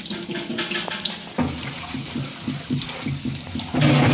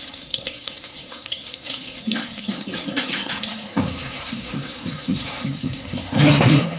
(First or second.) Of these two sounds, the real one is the first